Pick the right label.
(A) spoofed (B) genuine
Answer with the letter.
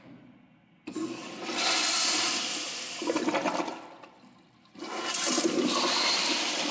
B